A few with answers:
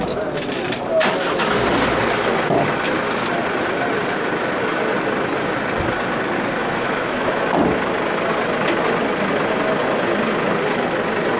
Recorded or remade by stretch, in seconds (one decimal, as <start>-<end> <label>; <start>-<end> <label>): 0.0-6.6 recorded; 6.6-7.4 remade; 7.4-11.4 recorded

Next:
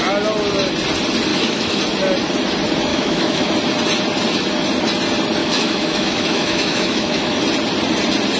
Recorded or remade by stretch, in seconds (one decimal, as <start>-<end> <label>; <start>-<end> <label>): 0.0-1.3 recorded; 1.3-1.8 remade; 1.8-2.9 recorded; 2.9-3.5 remade; 3.5-5.4 recorded; 5.4-7.4 remade; 7.4-8.4 recorded

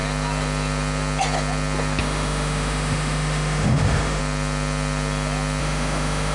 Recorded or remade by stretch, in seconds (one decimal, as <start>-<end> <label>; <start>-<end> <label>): 0.0-2.0 recorded; 2.0-4.2 remade; 4.2-5.6 recorded; 5.6-6.3 remade